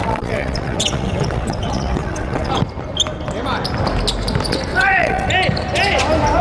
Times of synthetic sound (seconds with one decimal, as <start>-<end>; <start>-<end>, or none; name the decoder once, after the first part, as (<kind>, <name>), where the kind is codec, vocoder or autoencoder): 0.0-2.5 (vocoder, WaveNeXt); 4.7-5.3